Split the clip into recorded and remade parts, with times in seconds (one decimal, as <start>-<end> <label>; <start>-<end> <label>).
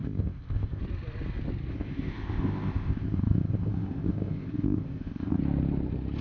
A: 0.0-0.8 remade; 0.8-1.7 recorded; 1.7-5.4 remade; 5.4-6.2 recorded